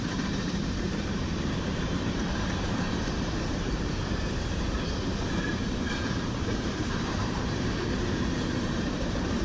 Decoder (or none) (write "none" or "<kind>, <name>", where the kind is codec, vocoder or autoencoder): vocoder, BigVGAN v2